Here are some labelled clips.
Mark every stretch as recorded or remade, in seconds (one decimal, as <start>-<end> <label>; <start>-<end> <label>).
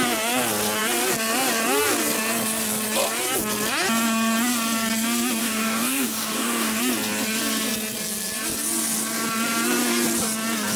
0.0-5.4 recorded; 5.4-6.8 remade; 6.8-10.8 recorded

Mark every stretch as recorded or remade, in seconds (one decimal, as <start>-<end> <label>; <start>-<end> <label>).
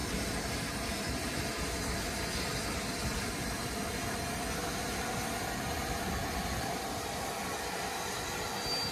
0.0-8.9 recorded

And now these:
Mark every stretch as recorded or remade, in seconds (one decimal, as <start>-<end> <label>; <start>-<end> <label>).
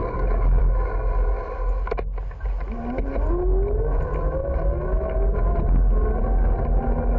0.0-0.6 remade; 0.6-7.2 recorded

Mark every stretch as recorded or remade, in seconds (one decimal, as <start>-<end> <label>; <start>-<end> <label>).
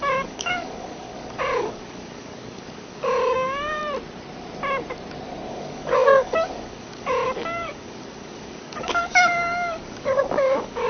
0.0-3.8 remade; 3.8-5.5 recorded; 5.5-10.9 remade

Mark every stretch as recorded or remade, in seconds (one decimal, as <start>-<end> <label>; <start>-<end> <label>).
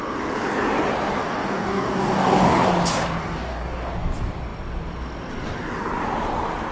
0.0-1.2 recorded; 1.2-2.7 remade; 2.7-3.2 recorded; 3.2-3.9 remade; 3.9-6.7 recorded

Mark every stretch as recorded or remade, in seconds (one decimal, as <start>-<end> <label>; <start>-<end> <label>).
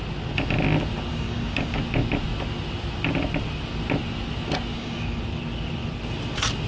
0.0-1.1 recorded; 1.1-1.8 remade; 1.8-4.7 recorded; 4.7-5.2 remade; 5.2-6.7 recorded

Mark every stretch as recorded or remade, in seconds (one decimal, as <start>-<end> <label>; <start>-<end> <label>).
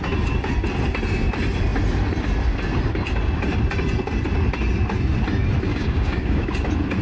0.0-5.7 recorded; 5.7-6.5 remade; 6.5-7.0 recorded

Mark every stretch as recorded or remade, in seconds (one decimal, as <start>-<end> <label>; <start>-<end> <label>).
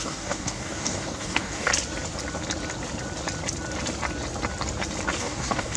0.0-1.7 remade; 1.7-5.2 recorded; 5.2-5.8 remade